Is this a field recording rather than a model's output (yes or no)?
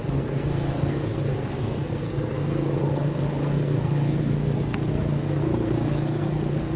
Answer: no